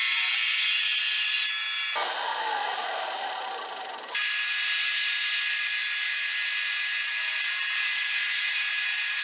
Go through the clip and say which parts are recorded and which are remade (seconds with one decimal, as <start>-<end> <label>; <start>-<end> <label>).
0.0-2.6 recorded; 2.6-4.3 remade; 4.3-9.2 recorded